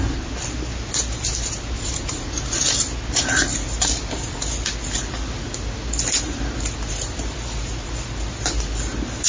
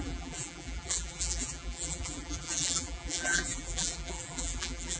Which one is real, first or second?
first